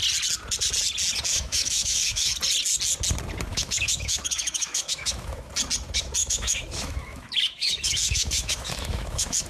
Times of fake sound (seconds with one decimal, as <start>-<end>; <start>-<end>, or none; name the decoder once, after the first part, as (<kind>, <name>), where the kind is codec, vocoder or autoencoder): 1.3-2.3 (autoencoder, DAC-VAE); 3.5-5.5; 6.2-9.5